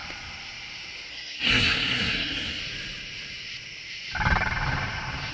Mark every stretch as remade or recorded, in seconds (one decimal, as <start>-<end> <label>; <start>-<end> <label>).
0.0-1.1 recorded; 1.1-2.6 remade; 2.6-5.3 recorded